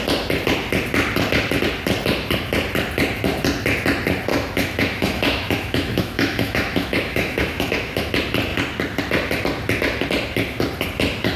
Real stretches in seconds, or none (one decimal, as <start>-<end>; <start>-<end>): 0.0-4.3; 8.1-11.4